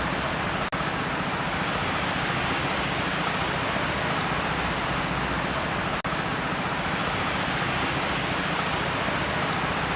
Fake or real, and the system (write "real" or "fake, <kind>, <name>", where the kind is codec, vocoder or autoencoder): real